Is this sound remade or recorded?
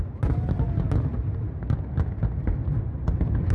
recorded